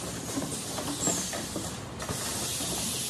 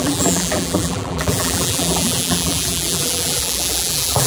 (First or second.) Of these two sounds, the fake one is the second